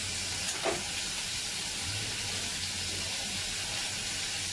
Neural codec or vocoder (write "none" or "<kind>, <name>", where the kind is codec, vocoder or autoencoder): none